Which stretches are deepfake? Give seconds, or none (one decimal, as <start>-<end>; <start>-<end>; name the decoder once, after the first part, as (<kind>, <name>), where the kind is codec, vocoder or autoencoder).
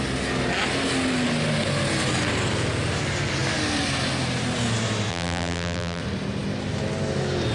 5.1-6.0 (vocoder, BigVGAN v2)